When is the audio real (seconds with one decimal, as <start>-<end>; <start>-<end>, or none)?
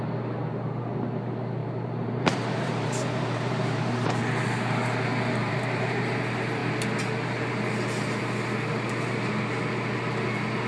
0.0-1.6; 4.2-5.4; 6.0-10.7